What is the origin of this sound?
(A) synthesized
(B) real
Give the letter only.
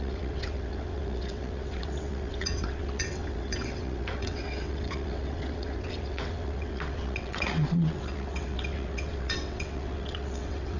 A